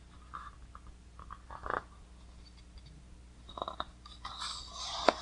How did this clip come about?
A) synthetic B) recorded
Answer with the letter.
B